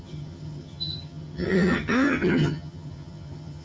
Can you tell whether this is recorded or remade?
remade